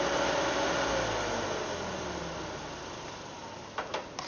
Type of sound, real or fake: real